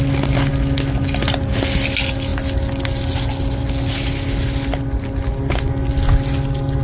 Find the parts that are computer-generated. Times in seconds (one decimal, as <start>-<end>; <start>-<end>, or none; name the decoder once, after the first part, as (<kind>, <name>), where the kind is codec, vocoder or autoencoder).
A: none